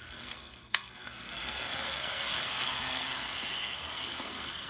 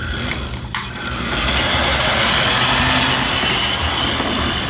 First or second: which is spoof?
first